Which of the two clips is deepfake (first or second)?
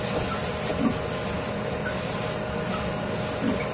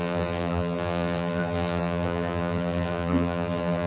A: second